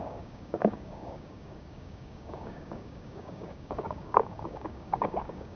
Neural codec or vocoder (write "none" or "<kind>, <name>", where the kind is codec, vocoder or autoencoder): codec, DAC